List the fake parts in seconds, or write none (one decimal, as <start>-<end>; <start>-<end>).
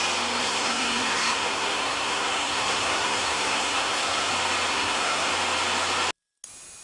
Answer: 0.4-4.3; 4.7-5.3